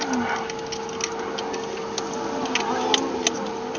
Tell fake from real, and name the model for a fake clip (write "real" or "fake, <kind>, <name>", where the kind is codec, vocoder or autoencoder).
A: real